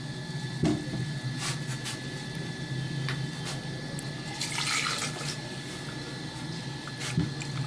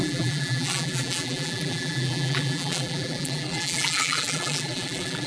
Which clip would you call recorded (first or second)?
first